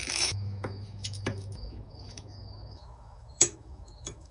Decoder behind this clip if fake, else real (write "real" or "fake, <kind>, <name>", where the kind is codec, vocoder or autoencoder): fake, autoencoder, DAC-VAE